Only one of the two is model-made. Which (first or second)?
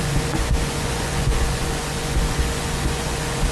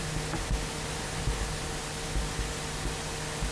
first